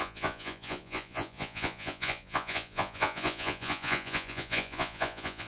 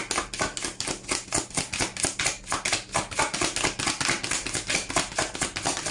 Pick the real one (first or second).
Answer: second